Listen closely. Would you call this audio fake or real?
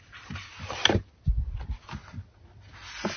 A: real